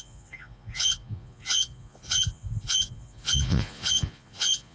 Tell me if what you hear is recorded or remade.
remade